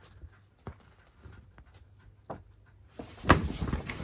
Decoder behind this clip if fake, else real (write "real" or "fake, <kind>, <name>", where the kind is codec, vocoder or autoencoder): real